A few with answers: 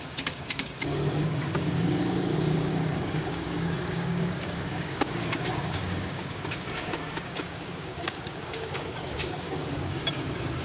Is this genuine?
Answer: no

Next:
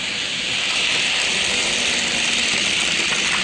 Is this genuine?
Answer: yes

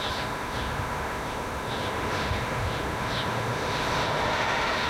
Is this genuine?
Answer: no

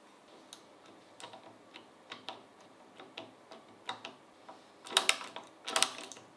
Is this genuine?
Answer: yes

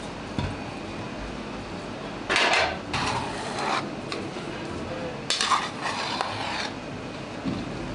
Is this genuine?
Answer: yes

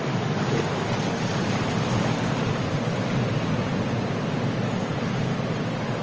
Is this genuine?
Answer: yes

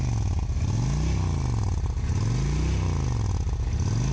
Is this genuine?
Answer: yes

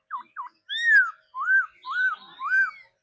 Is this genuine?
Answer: yes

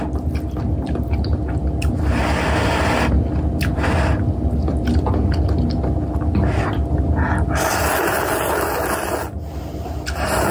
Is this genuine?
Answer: yes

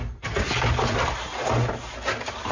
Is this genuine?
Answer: yes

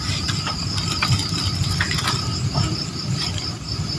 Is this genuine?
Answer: yes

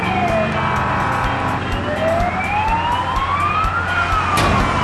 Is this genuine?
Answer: yes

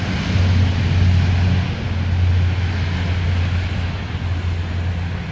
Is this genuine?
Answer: yes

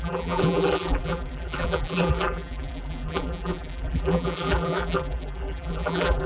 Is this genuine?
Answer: no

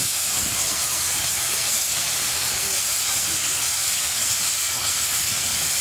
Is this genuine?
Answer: no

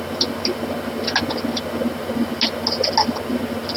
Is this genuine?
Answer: yes